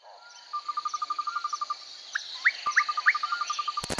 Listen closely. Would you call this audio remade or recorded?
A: recorded